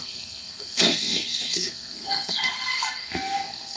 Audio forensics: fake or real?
fake